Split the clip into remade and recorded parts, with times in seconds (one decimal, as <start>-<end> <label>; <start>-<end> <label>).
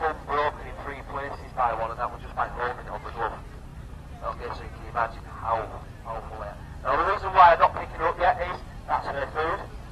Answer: 0.0-3.7 recorded; 3.7-4.4 remade; 4.4-7.3 recorded; 7.3-7.9 remade; 7.9-9.9 recorded